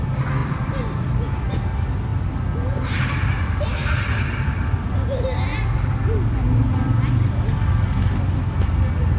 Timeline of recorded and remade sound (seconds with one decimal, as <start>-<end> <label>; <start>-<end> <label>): 0.0-0.4 recorded; 0.4-1.0 remade; 1.0-3.7 recorded; 3.7-4.8 remade; 4.8-9.2 recorded